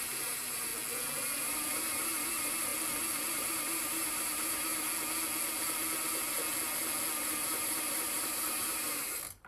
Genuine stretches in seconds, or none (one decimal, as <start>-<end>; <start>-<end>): 0.7-1.4; 2.7-3.3; 4.7-7.5